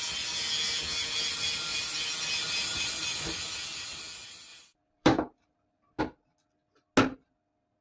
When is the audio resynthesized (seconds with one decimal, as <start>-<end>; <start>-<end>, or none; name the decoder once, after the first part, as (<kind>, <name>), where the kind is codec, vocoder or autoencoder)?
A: 4.5-6.0 (vocoder, BigVGAN v2)